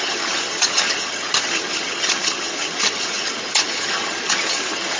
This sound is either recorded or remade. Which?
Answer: remade